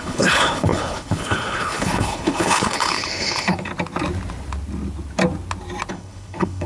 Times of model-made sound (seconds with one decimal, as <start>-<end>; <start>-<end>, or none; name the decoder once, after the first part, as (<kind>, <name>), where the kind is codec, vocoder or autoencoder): 0.0-3.7 (codec, HILCodec); 5.9-6.7